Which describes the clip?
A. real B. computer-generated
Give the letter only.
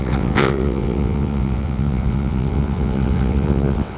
B